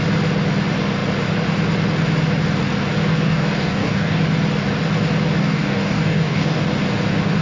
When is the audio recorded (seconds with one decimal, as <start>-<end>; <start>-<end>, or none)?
0.0-3.0; 4.2-5.4; 6.7-7.4